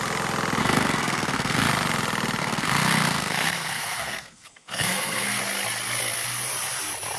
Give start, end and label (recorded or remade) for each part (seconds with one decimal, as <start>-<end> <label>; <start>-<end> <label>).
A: 0.0-0.6 recorded; 0.6-1.7 remade; 1.7-2.4 recorded; 2.4-5.4 remade; 5.4-7.2 recorded